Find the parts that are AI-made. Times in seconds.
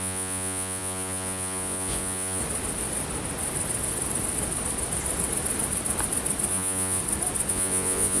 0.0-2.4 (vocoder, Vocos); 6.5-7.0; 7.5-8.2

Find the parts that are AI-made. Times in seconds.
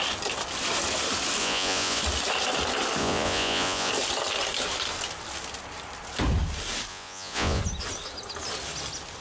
1.4-2.0 (vocoder, Vocos); 3.0-3.9; 6.9-7.6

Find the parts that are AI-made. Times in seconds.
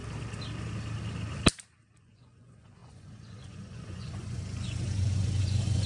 2.0-5.9 (vocoder, Vocos)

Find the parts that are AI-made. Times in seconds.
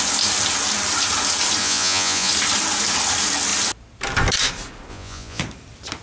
1.6-2.3 (vocoder, Vocos); 4.9-5.4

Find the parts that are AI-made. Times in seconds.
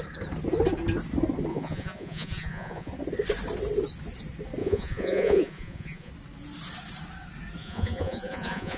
1.5-2.9 (vocoder, Vocos); 4.6-6.1; 7.6-8.8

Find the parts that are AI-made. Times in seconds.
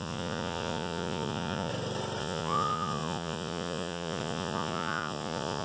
0.0-1.7 (vocoder, Vocos); 2.2-5.6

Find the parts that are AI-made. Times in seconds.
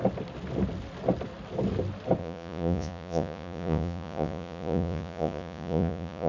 2.2-6.3 (vocoder, Vocos)